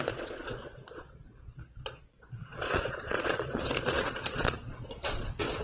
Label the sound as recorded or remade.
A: remade